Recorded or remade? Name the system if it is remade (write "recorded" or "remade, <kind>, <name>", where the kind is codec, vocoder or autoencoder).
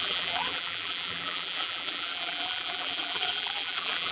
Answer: remade, vocoder, BigVGAN v2